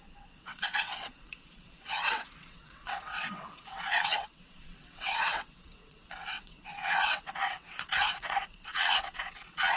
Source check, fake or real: fake